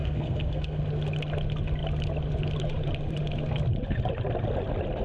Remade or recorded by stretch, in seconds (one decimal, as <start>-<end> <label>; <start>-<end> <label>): 0.0-0.8 remade; 0.8-5.0 recorded